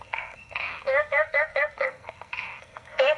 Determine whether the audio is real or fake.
fake